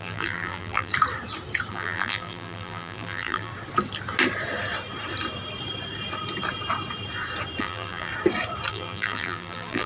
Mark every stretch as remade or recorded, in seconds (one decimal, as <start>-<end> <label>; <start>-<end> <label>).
0.0-0.9 remade; 0.9-1.7 recorded; 1.7-3.5 remade; 3.5-7.6 recorded; 7.6-8.1 remade; 8.1-8.7 recorded; 8.7-9.9 remade